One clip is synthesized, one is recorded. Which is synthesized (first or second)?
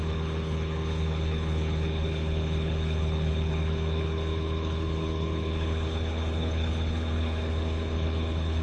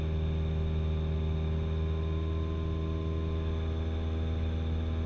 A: first